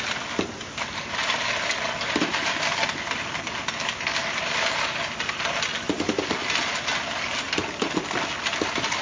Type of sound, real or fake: real